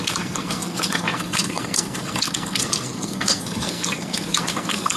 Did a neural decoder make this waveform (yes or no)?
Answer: yes